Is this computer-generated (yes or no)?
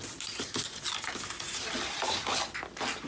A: no